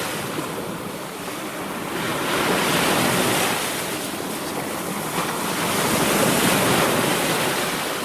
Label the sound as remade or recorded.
recorded